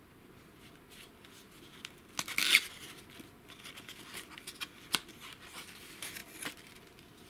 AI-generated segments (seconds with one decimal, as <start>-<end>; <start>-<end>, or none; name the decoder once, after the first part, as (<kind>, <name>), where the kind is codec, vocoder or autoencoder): none